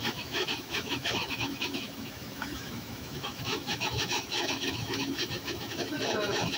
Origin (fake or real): fake